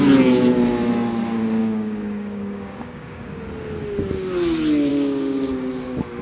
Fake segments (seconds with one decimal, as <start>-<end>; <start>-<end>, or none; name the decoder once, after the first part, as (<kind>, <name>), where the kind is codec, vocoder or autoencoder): 1.6-3.4 (codec, DAC); 4.9-5.7

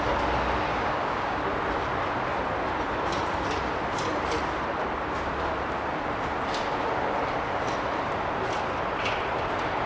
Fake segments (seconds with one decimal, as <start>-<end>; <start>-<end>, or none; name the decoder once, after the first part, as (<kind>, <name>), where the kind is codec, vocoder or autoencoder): 0.7-1.4 (codec, DAC)

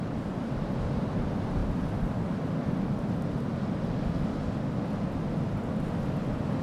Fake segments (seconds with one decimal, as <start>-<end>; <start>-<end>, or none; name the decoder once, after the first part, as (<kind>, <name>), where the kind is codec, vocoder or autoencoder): none

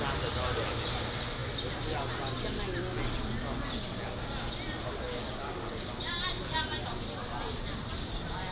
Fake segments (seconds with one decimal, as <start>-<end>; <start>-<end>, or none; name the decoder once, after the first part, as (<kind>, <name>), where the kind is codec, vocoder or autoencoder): none

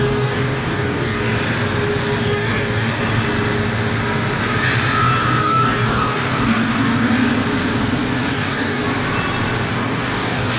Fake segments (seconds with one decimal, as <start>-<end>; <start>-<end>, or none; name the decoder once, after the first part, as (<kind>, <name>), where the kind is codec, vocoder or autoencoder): 0.0-1.3 (codec, DAC); 2.2-3.0; 5.4-7.2; 8.3-8.8; 9.7-10.6

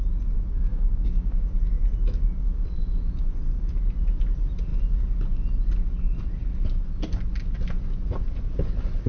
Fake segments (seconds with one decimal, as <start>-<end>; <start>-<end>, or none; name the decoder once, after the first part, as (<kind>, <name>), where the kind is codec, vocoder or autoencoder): 0.7-1.6 (codec, DAC)